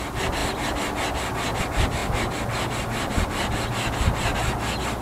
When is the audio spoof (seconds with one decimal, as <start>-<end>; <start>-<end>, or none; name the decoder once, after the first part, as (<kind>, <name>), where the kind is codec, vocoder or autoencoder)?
none